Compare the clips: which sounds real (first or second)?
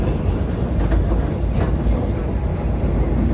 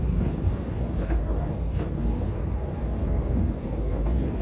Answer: first